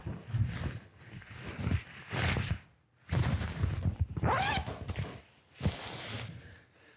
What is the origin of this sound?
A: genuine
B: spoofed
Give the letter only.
A